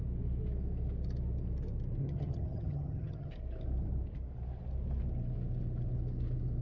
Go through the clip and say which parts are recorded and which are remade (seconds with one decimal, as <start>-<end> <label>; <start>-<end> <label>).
0.0-2.0 recorded; 2.0-3.3 remade; 3.3-6.6 recorded